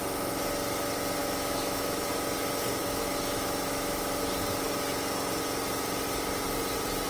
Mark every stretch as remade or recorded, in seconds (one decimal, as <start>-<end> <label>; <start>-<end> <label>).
0.0-1.2 recorded; 1.2-2.1 remade; 2.1-2.8 recorded; 2.8-4.3 remade; 4.3-7.1 recorded